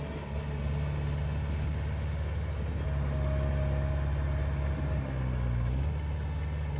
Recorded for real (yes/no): yes